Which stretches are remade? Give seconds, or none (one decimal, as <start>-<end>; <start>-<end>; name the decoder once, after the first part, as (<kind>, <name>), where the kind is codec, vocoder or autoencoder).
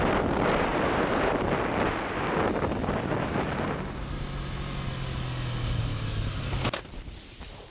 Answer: 0.7-1.4 (vocoder, BigVGAN v2)